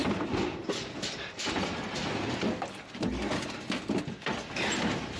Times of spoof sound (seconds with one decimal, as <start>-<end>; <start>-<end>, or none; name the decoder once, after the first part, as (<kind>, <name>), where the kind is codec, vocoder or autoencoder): none